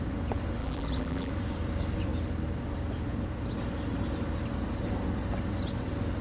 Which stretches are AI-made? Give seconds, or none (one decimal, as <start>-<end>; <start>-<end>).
0.6-1.3